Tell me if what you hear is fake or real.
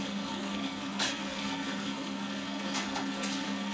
fake